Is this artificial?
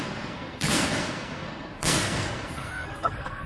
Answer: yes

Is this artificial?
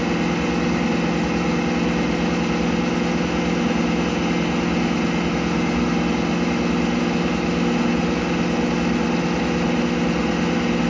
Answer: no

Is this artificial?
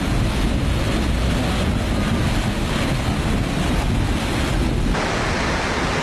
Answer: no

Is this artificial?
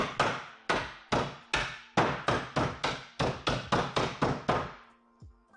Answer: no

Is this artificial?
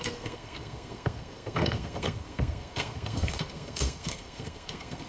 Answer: yes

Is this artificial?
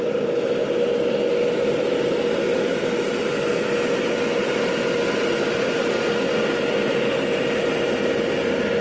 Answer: no